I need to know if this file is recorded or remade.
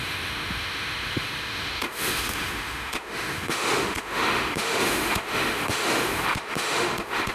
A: remade